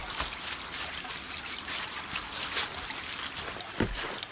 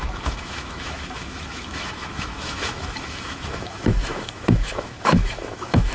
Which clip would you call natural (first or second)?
first